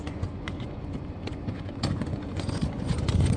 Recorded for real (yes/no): no